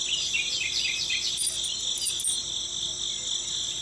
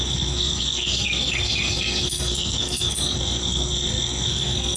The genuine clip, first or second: first